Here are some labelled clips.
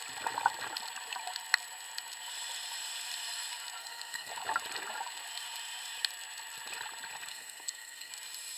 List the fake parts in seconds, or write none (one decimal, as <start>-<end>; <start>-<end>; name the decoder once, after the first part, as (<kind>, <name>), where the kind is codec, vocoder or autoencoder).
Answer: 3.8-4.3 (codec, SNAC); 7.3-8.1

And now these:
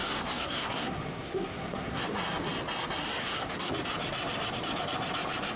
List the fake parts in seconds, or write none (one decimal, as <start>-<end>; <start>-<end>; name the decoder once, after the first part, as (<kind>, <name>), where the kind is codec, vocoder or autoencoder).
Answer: 0.0-2.0 (codec, SNAC); 3.2-3.7

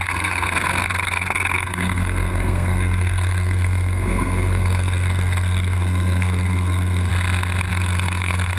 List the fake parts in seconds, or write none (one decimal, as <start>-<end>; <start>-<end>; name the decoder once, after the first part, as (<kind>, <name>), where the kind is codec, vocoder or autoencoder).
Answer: 0.0-7.1 (codec, SNAC); 7.7-8.6